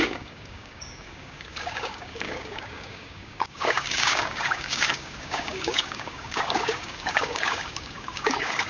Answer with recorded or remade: remade